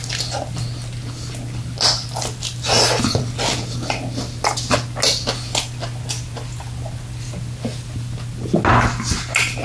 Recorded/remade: recorded